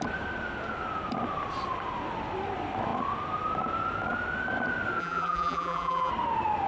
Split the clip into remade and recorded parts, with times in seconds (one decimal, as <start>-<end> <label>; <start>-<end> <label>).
0.0-5.0 recorded; 5.0-6.1 remade; 6.1-6.7 recorded